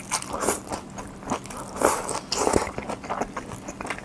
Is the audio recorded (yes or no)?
yes